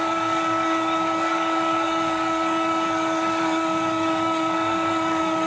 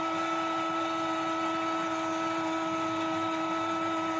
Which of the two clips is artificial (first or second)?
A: first